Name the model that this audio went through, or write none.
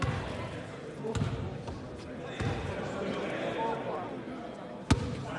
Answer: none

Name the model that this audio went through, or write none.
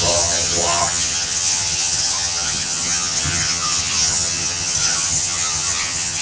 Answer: vocoder, HiFi-GAN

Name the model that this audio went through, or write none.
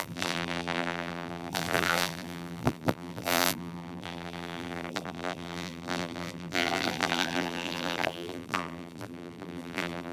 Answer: vocoder, BigVGAN v2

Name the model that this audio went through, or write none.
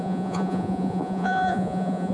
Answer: vocoder, Vocos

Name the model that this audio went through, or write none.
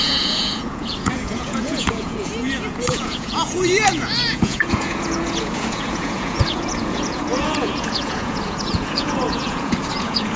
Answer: vocoder, Vocos